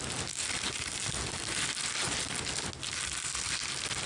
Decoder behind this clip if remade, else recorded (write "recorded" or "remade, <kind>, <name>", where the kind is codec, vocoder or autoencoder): recorded